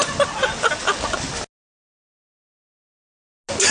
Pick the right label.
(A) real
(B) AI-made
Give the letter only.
A